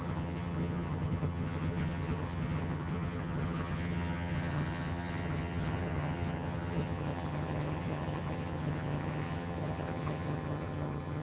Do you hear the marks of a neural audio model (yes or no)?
yes